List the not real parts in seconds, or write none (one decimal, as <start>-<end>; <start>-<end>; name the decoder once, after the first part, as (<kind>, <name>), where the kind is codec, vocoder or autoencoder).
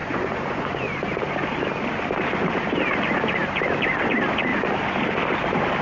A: 0.0-1.2 (vocoder, Vocos)